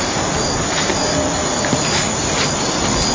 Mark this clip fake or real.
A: real